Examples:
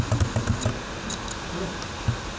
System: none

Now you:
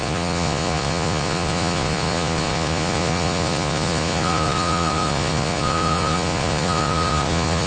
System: vocoder, Vocos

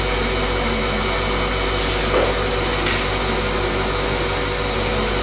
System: none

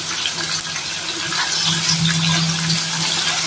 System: none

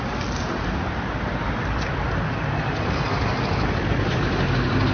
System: none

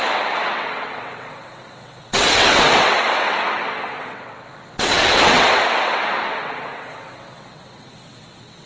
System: vocoder, WaveNeXt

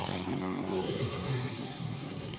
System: codec, SNAC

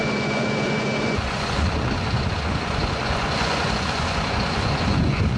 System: vocoder, Vocos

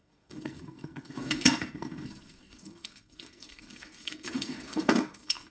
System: codec, SNAC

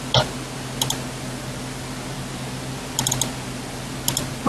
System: none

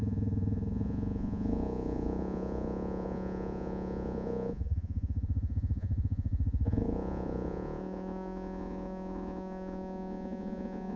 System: vocoder, Vocos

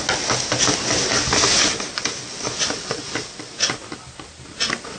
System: none